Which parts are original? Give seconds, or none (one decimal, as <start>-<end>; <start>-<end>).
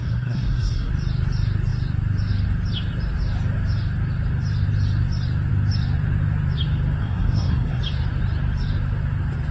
0.9-7.0; 7.8-9.5